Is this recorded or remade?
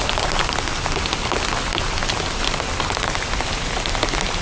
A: recorded